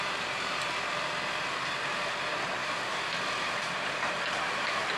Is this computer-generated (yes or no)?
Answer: yes